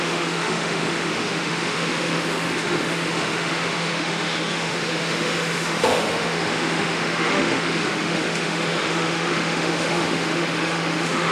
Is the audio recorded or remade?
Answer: remade